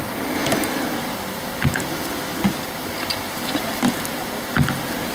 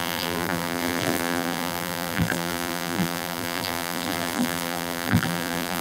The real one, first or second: first